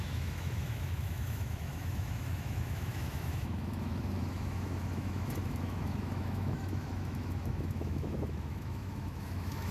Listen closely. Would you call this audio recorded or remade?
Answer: remade